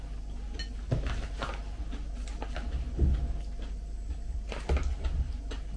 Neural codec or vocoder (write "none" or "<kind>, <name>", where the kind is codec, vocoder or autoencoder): none